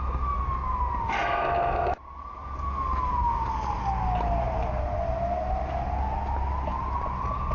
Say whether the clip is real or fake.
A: real